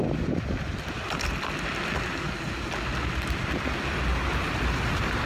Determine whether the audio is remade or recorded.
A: recorded